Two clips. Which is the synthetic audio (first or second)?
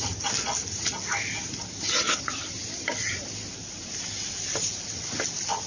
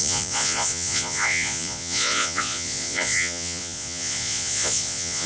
second